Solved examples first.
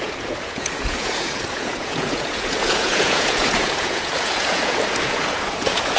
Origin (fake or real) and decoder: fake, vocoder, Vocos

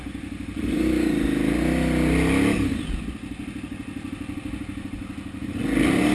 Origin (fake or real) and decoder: real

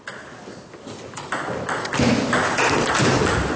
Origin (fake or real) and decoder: real